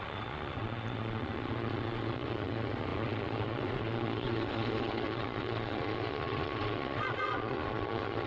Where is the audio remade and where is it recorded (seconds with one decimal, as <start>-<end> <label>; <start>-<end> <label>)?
0.0-8.3 remade